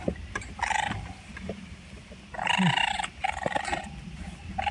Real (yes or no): yes